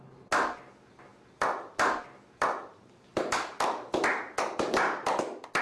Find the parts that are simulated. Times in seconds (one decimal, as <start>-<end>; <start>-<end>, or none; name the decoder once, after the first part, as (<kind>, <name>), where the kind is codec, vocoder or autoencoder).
none